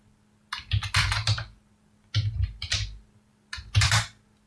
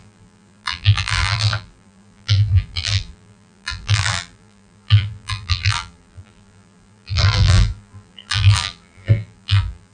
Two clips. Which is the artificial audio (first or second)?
second